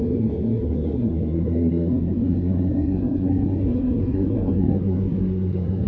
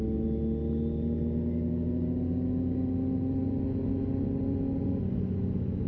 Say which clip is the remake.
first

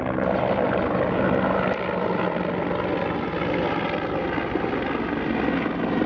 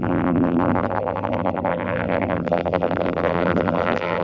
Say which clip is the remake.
second